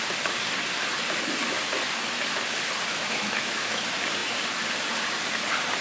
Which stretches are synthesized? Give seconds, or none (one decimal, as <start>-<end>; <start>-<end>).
2.9-3.8